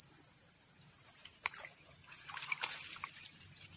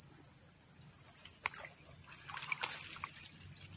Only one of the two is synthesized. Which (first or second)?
first